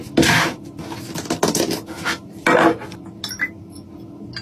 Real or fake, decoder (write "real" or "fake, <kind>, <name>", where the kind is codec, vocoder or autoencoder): real